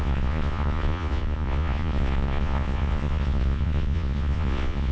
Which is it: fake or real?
fake